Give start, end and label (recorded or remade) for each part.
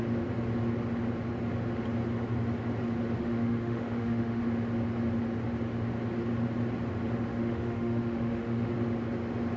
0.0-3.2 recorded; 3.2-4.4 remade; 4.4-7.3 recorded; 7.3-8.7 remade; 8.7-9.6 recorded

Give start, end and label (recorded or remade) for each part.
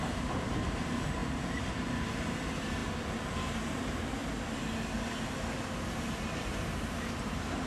0.0-4.2 remade; 4.2-6.0 recorded; 6.0-7.7 remade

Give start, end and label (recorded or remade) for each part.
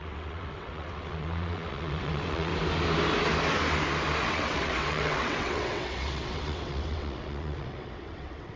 0.0-2.5 remade; 2.5-4.2 recorded; 4.2-8.6 remade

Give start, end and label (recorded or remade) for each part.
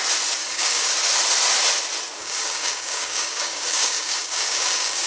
0.0-0.4 recorded; 0.4-0.9 remade; 0.9-2.2 recorded; 2.2-5.1 remade